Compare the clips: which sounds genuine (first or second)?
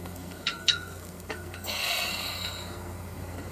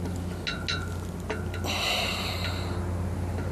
second